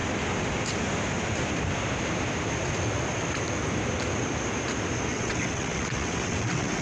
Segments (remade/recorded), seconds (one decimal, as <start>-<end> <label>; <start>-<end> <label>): 0.0-5.1 recorded; 5.1-6.8 remade